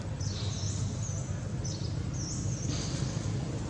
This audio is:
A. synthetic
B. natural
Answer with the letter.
B